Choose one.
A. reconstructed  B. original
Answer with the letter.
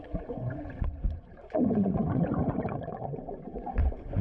A